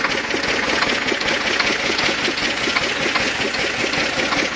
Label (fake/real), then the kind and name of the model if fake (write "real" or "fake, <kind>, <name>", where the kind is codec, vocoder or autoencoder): fake, vocoder, Vocos